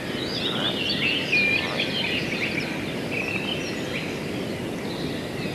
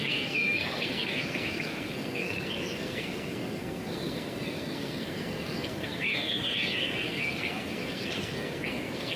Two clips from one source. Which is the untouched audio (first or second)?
first